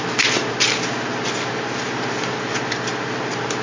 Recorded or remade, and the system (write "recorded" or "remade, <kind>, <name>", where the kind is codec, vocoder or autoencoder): recorded